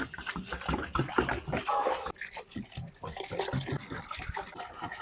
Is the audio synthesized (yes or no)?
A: no